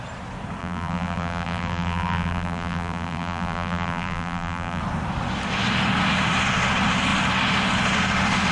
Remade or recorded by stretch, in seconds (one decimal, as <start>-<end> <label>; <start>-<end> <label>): 0.0-0.6 recorded; 0.6-4.8 remade; 4.8-8.5 recorded